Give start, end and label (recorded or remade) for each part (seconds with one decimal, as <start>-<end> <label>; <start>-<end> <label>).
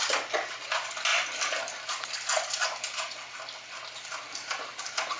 0.0-5.2 recorded